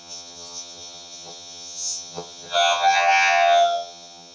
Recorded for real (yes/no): no